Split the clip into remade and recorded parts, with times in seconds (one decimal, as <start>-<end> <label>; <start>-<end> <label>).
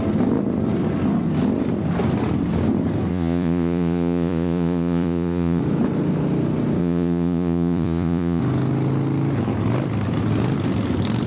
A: 0.0-3.1 recorded; 3.1-5.6 remade; 5.6-6.8 recorded; 6.8-8.4 remade; 8.4-11.3 recorded